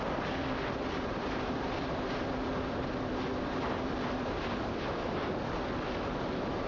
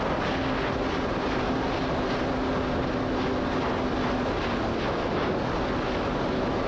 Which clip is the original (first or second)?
second